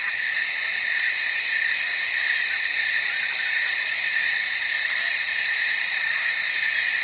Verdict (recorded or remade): recorded